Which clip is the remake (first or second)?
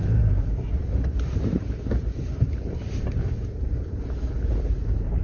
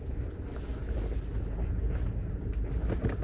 first